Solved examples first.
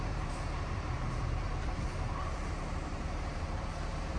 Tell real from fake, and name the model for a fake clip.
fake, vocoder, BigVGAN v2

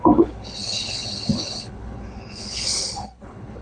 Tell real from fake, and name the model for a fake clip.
fake, codec, HILCodec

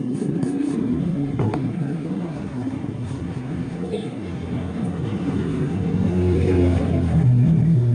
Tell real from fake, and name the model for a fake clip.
fake, codec, SNAC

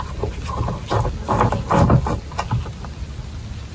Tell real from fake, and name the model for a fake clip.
real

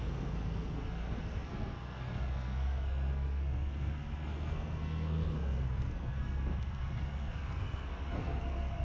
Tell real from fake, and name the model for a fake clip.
fake, codec, SNAC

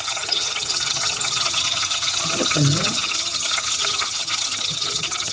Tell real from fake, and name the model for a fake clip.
fake, vocoder, HiFi-GAN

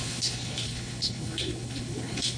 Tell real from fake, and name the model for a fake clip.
fake, codec, HILCodec